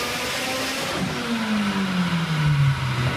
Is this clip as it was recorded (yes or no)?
yes